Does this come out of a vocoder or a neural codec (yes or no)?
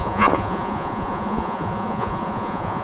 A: yes